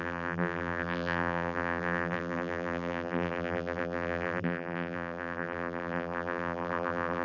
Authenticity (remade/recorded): remade